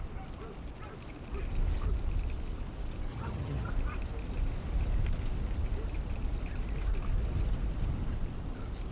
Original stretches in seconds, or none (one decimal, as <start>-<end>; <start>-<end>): 0.0-3.1; 3.7-8.9